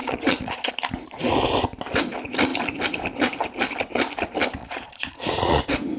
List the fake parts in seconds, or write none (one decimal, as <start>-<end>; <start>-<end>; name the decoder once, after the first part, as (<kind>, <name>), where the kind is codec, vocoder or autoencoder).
0.0-0.7 (vocoder, Vocos); 4.6-5.6